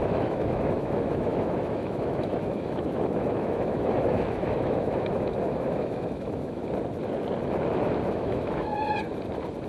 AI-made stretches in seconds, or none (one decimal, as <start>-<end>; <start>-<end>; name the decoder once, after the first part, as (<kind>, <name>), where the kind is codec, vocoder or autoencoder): 0.0-6.6 (autoencoder, DAC-VAE); 8.1-8.7